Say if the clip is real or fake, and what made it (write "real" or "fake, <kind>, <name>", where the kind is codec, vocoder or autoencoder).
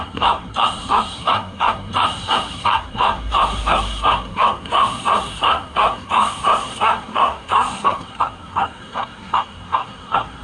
fake, codec, SNAC